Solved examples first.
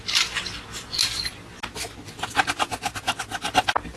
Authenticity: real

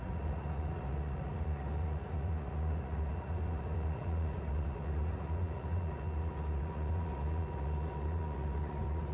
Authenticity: fake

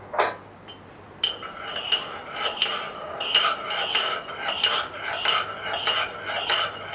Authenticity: real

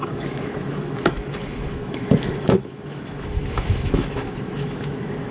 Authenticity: fake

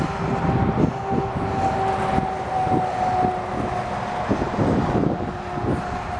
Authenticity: real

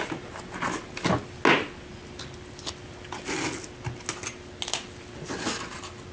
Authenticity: real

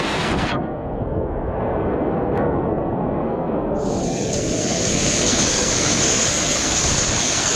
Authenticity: fake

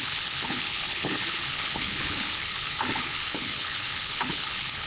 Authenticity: fake